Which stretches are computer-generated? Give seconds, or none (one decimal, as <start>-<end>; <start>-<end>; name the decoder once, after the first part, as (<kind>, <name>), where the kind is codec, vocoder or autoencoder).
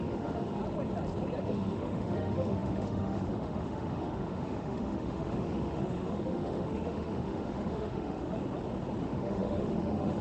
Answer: 0.0-0.6 (autoencoder, DAC-VAE); 1.4-8.4; 9.0-10.2